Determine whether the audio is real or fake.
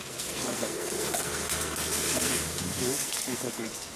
fake